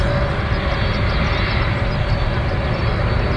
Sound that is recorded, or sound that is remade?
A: recorded